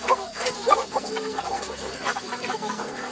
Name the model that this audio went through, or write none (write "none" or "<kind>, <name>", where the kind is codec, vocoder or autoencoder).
codec, SNAC